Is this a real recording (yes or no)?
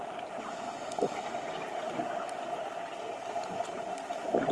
yes